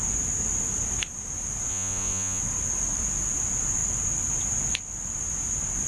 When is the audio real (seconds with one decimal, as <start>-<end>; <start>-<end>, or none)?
0.0-1.7; 2.4-5.9